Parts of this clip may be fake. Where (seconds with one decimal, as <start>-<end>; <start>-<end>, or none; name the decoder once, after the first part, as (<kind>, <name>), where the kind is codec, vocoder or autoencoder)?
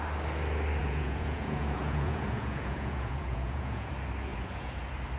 0.8-3.9 (vocoder, Vocos); 4.3-4.8